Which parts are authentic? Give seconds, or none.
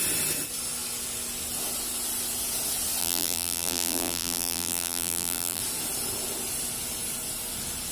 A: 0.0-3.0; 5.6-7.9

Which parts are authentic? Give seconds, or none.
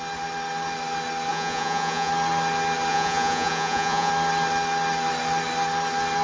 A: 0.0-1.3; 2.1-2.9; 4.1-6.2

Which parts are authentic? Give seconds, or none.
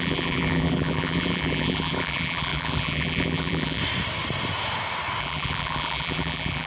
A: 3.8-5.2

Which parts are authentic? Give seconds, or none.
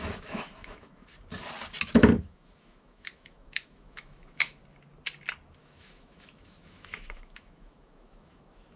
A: 1.1-2.2; 4.6-5.6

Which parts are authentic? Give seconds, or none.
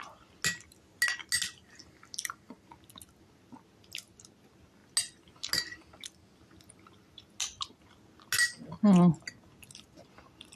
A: 0.0-10.6